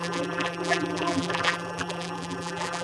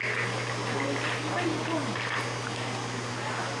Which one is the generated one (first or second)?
first